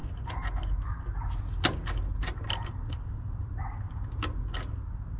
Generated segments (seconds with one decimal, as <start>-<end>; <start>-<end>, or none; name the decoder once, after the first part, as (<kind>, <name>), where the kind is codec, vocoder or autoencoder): none